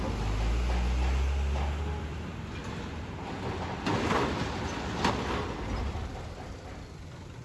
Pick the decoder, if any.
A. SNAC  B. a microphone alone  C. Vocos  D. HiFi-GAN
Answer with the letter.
B